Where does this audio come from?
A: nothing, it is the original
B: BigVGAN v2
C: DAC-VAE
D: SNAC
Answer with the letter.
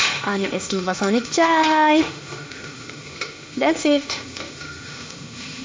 C